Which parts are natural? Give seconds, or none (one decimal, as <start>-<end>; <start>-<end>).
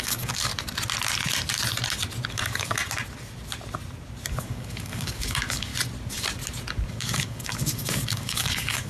0.5-2.3; 2.8-4.3; 5.7-6.9